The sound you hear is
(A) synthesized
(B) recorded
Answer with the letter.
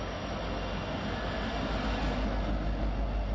B